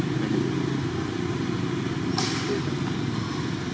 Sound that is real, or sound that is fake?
real